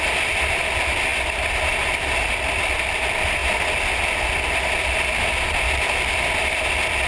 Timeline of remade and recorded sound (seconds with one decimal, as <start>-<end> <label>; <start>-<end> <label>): 0.0-7.1 recorded